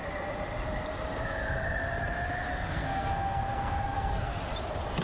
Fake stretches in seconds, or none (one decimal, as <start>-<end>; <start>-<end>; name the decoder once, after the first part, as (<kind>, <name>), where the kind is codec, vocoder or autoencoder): 2.5-4.4 (codec, SNAC)

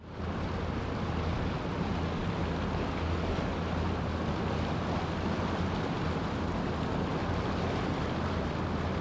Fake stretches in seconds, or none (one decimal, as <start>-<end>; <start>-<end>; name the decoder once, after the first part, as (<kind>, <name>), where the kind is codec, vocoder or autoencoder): none

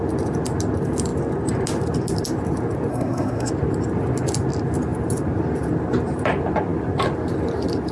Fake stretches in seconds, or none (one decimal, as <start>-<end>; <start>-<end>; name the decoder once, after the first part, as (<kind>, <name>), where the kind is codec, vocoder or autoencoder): 2.9-3.5 (codec, SNAC)

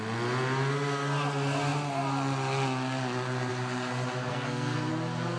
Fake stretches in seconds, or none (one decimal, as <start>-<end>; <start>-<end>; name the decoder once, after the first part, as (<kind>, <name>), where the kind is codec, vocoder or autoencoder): 4.3-4.9 (codec, SNAC)

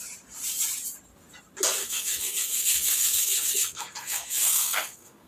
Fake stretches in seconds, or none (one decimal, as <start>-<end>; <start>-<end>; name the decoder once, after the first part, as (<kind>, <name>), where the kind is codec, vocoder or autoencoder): 1.8-5.3 (codec, SNAC)

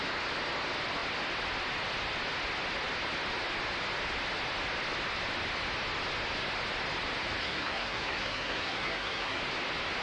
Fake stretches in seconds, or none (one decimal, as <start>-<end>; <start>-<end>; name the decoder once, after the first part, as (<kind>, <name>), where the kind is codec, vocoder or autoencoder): 7.4-9.4 (codec, SNAC)

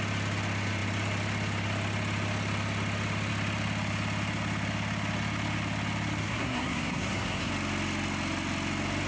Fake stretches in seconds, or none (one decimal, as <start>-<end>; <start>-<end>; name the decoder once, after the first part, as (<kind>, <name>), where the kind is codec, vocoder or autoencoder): 6.2-7.5 (codec, SNAC)

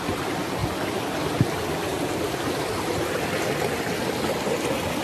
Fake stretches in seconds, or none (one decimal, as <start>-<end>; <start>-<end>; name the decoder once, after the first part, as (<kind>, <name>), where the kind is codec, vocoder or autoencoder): none